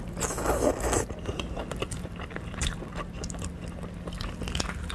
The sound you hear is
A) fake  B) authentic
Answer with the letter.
B